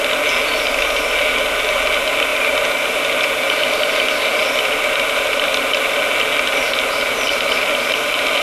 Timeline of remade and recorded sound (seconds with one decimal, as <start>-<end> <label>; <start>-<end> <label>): 0.0-8.4 recorded